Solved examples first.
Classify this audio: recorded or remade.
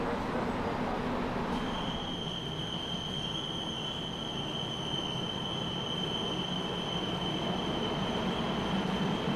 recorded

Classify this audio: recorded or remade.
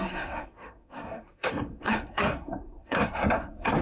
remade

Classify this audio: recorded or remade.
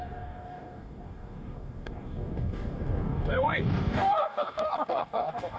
remade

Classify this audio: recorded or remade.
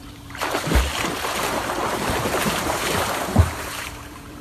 remade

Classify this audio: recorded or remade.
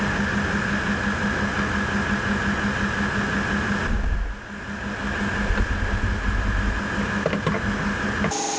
recorded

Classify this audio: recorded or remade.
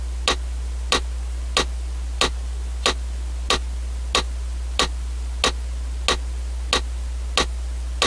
recorded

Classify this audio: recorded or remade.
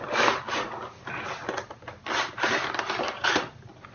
recorded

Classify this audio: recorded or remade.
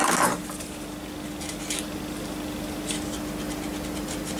recorded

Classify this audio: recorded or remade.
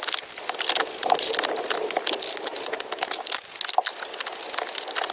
recorded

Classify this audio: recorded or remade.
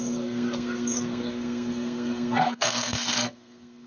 remade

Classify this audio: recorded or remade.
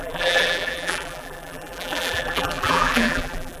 remade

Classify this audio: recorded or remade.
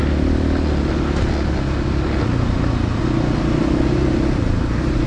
recorded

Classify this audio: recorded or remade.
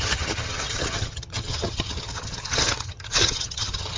remade